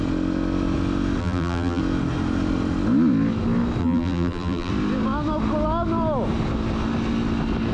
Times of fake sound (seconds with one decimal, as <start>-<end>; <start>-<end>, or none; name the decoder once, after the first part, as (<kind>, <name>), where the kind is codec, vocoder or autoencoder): 1.2-1.8 (vocoder, BigVGAN v2); 3.8-4.7